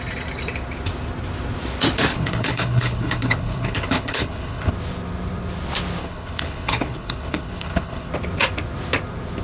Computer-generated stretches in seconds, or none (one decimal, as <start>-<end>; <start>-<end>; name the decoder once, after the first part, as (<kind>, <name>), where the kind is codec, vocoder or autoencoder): 2.1-4.7 (codec, HILCodec); 6.0-8.1

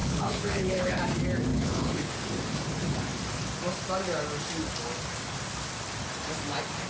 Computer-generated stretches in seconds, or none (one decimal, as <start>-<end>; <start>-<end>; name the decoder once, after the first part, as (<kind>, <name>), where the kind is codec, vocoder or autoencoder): 0.0-1.0 (codec, HILCodec); 1.5-2.1

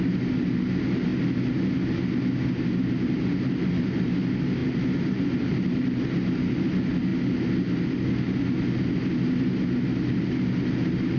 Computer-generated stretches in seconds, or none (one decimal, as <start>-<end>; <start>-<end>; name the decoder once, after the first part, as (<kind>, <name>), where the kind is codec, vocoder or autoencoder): none

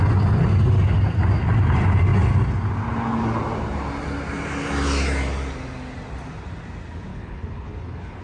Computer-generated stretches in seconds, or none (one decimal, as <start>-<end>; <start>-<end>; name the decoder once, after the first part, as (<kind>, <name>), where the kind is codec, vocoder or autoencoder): 7.1-8.2 (codec, HILCodec)